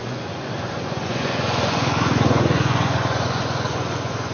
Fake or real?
fake